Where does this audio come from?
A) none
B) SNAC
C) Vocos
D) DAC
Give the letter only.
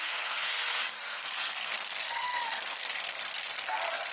B